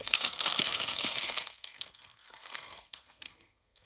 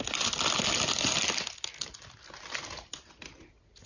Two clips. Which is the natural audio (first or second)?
second